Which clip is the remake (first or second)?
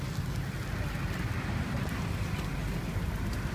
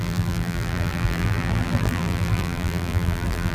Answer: second